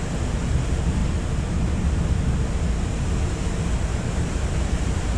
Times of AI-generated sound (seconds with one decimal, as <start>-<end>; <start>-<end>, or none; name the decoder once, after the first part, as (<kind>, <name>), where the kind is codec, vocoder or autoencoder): 3.9-4.8 (vocoder, BigVGAN v2)

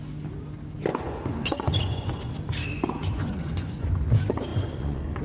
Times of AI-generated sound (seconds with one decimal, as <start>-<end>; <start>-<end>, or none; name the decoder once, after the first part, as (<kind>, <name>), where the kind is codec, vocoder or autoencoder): 0.9-2.3 (vocoder, Vocos); 3.0-3.9; 4.5-5.2

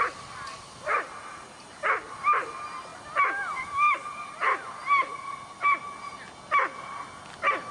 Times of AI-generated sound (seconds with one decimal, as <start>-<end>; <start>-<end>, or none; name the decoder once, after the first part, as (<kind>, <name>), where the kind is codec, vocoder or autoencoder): none

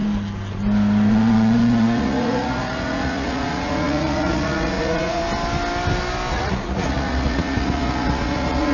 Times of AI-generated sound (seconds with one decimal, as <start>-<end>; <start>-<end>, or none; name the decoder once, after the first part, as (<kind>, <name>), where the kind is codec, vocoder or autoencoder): 1.1-5.2 (vocoder, Vocos); 6.3-8.7

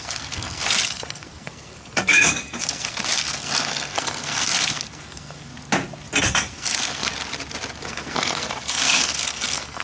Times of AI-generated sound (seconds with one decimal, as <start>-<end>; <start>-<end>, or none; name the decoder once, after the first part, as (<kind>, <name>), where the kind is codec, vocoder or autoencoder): 0.0-5.5 (codec, SNAC); 6.2-7.1; 7.8-9.8

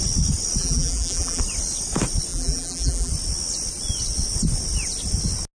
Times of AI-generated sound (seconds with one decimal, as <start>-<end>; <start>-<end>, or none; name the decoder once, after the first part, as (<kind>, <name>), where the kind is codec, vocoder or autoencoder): 0.6-1.4 (vocoder, BigVGAN v2); 2.3-3.1

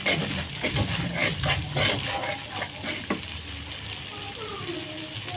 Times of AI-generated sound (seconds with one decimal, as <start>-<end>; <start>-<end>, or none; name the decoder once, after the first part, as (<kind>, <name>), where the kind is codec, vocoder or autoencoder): none

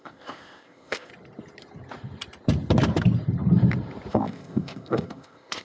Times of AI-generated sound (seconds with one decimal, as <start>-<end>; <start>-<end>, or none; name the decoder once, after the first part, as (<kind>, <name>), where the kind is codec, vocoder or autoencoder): 0.0-1.1 (codec, ZipCodec); 4.1-5.6